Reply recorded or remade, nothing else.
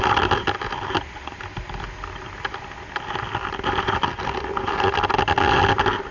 recorded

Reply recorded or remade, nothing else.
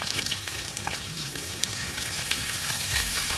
remade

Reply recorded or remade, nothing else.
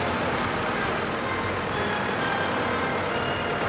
recorded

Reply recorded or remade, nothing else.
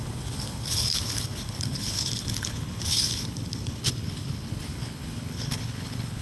remade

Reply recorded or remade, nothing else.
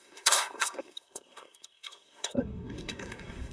remade